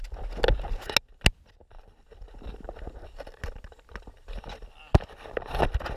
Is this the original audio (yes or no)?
yes